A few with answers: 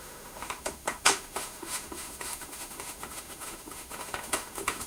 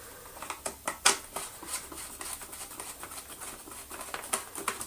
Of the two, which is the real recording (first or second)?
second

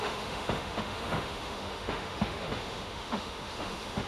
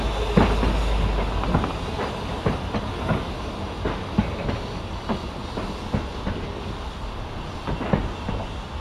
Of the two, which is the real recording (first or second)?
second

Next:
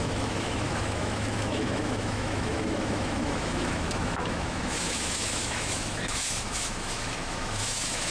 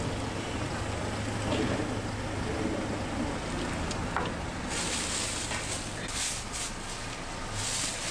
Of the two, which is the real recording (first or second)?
second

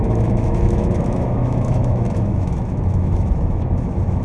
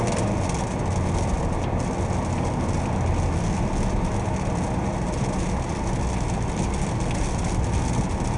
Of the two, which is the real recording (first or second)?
second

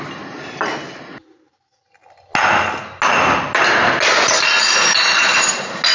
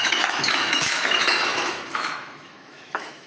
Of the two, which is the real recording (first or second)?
first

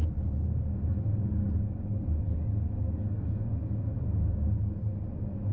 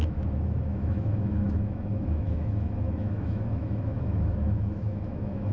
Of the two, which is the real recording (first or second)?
first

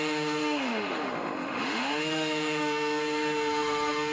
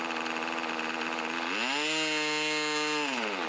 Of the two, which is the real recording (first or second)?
second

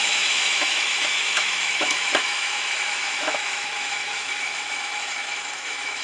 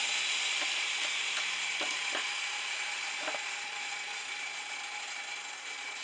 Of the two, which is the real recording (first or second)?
second